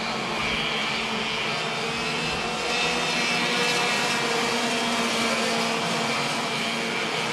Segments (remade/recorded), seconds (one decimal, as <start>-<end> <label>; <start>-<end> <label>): 0.0-7.3 recorded

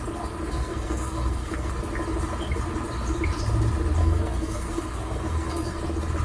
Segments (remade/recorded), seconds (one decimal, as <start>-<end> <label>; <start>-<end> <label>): 0.0-0.5 recorded; 0.5-1.7 remade; 1.7-4.0 recorded; 4.0-5.8 remade; 5.8-6.2 recorded